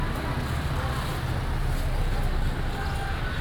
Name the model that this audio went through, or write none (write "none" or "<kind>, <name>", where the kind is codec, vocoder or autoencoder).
none